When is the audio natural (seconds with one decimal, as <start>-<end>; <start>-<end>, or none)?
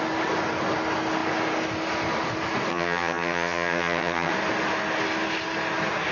0.0-2.7; 4.3-6.1